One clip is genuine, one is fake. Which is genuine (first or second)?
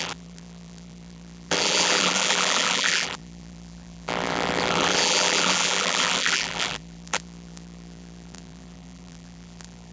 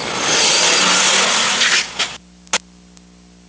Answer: second